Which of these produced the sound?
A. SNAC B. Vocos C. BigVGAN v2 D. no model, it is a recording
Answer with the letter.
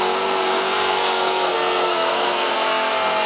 A